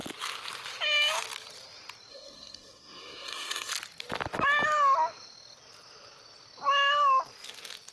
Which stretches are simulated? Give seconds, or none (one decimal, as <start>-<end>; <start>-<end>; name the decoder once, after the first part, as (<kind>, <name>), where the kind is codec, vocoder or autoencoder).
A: 2.1-3.7 (codec, SNAC)